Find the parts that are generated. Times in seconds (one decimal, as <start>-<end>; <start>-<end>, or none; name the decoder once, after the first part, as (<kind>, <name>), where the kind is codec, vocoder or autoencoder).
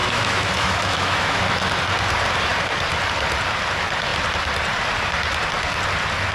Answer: 0.0-1.4 (autoencoder, DAC-VAE)